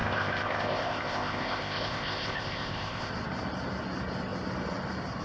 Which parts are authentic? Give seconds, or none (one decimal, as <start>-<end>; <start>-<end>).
3.1-5.2